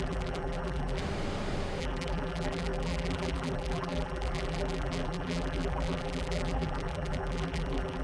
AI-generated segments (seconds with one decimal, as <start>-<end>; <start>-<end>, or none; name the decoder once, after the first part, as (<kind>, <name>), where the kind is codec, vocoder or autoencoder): 0.0-1.0 (vocoder, BigVGAN v2); 1.8-8.0

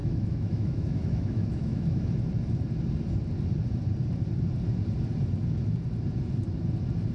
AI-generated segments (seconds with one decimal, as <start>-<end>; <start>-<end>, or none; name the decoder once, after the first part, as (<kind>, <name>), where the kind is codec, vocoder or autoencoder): 0.0-2.1 (autoencoder, DAC-VAE)

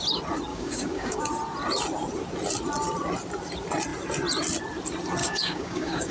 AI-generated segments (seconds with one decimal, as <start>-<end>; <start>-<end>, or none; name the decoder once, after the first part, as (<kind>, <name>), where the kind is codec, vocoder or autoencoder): 0.5-1.2 (codec, DAC); 5.2-6.1

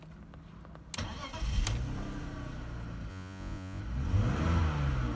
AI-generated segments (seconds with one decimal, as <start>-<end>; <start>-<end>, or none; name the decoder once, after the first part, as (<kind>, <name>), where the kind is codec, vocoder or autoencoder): 3.1-3.8 (vocoder, Vocos)

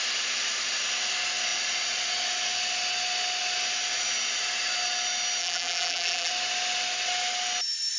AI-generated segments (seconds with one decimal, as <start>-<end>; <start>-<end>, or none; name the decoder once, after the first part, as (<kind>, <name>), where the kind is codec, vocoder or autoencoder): 5.4-6.3 (vocoder, BigVGAN v2)

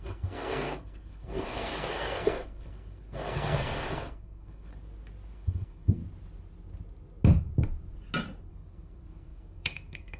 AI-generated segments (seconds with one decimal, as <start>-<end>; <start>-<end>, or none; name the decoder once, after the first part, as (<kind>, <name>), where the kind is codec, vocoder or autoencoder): 0.0-4.7 (codec, SNAC); 5.3-6.0; 8.5-10.2